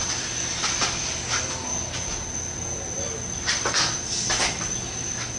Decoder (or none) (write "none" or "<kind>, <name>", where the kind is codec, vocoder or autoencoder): none